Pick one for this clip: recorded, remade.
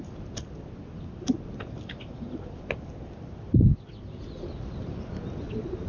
recorded